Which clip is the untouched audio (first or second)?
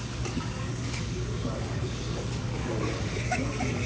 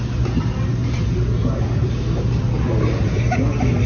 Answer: second